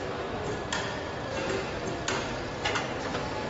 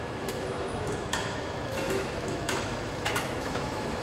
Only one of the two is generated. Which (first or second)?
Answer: second